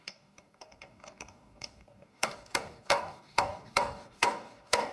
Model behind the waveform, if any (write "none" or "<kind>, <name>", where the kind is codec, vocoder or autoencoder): codec, DAC